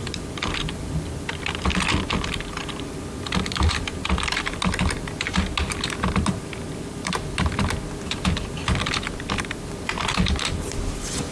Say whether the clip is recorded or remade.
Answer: remade